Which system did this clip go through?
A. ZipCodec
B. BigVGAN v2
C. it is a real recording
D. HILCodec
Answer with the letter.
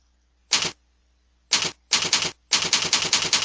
C